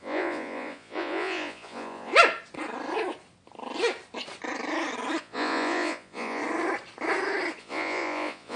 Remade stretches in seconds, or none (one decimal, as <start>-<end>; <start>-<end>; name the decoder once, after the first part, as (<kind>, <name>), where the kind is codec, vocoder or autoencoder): 0.0-2.1 (vocoder, Vocos); 5.2-6.4; 7.6-8.6